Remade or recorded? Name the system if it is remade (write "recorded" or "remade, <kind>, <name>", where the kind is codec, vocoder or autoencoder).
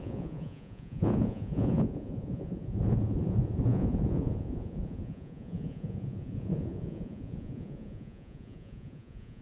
remade, vocoder, Vocos